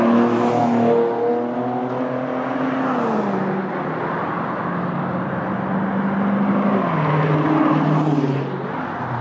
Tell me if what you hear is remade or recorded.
recorded